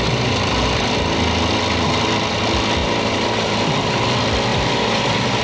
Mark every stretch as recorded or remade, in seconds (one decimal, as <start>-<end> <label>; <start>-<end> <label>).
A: 0.0-2.8 recorded; 2.8-4.1 remade; 4.1-4.5 recorded; 4.5-5.4 remade